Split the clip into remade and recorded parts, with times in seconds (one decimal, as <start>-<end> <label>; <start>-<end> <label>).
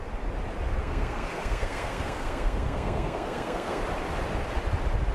0.0-0.8 recorded; 0.8-3.8 remade; 3.8-5.1 recorded